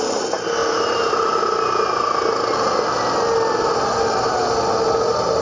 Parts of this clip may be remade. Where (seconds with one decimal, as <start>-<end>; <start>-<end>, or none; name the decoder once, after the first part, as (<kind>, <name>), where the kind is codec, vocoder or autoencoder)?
none